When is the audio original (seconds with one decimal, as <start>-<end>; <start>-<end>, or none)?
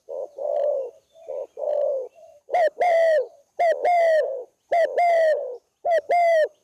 0.0-0.4; 3.6-6.6